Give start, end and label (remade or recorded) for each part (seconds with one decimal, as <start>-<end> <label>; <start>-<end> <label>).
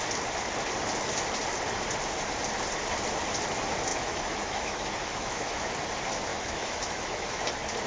0.0-3.9 recorded; 3.9-5.7 remade; 5.7-6.3 recorded; 6.3-7.5 remade; 7.5-7.9 recorded